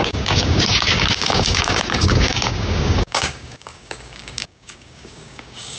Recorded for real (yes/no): no